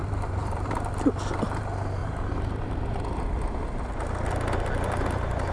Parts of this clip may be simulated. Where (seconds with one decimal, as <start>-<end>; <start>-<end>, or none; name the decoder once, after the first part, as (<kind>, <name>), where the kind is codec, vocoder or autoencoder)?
0.0-1.6 (vocoder, BigVGAN v2); 2.0-3.2